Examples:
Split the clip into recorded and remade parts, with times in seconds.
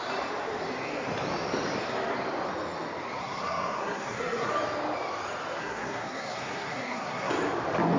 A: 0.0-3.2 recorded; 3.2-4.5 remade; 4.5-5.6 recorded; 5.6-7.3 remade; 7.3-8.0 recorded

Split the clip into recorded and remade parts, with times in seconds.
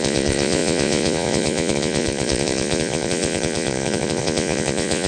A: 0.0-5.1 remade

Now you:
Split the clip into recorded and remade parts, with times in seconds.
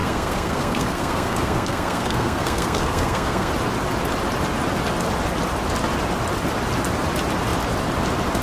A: 0.0-3.5 remade; 3.5-8.4 recorded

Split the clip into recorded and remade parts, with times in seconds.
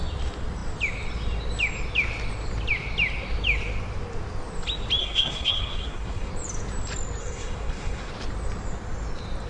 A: 0.0-5.0 recorded; 5.0-6.3 remade; 6.3-7.2 recorded; 7.2-8.1 remade; 8.1-9.5 recorded